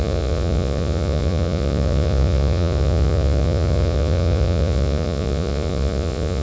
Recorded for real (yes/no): no